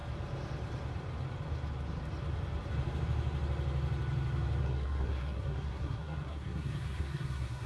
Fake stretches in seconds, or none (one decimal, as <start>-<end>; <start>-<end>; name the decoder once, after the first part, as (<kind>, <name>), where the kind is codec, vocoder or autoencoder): 4.6-7.7 (codec, SNAC)